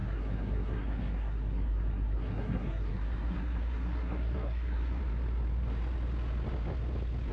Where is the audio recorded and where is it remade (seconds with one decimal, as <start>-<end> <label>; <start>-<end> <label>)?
0.0-5.0 remade; 5.0-7.3 recorded